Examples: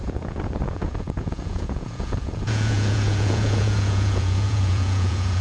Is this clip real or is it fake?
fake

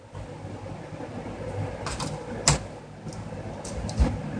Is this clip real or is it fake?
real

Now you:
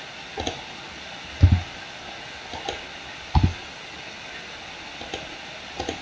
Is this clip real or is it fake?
real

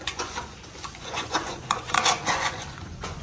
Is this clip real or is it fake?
fake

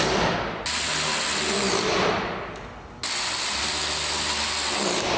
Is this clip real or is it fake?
real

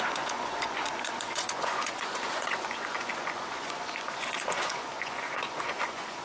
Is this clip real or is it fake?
fake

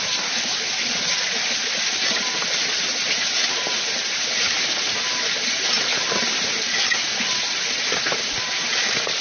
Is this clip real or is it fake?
real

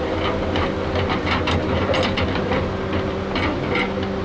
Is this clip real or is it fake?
real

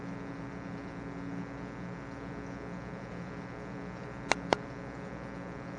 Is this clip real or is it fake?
real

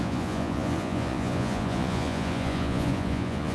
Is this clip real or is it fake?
fake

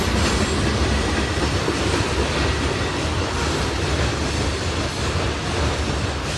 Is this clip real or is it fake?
real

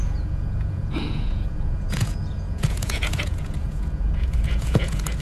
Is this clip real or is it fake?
fake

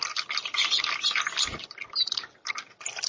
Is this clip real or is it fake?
real